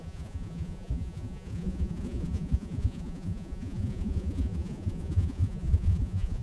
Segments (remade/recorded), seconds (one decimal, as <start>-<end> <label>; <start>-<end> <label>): 0.0-6.4 remade